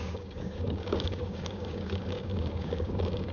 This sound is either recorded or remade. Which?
remade